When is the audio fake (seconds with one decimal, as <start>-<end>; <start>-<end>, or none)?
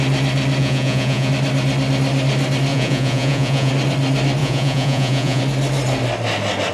0.6-1.3; 2.7-3.7; 4.4-5.4